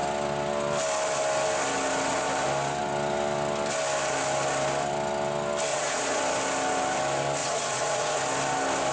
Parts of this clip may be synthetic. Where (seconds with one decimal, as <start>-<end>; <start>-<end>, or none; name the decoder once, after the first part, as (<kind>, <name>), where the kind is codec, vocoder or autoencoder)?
5.7-6.2 (vocoder, Vocos); 7.4-8.2

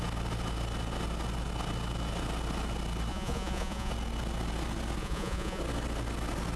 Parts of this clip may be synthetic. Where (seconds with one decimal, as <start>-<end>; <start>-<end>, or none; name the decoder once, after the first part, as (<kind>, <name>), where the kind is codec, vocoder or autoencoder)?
3.1-3.9 (vocoder, Vocos); 5.0-5.6